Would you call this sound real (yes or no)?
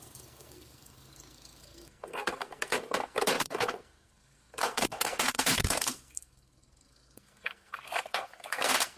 no